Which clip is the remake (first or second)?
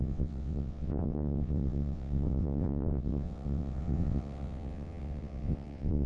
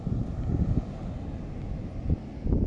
first